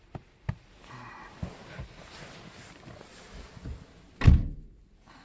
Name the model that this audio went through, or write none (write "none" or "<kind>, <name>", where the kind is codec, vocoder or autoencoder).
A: none